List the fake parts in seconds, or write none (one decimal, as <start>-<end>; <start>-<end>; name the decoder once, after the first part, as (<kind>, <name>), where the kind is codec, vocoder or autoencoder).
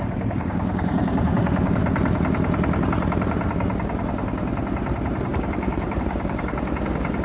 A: 0.0-1.8 (codec, DAC); 5.3-7.2